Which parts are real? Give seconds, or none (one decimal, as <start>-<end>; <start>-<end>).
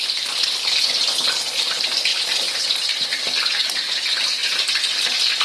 0.0-5.4